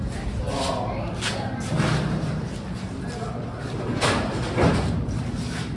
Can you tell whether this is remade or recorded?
recorded